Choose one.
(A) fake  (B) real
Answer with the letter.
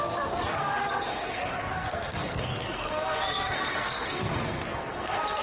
A